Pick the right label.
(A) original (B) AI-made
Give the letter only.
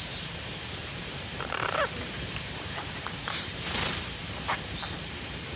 B